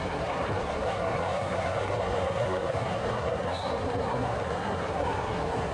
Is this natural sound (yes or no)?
no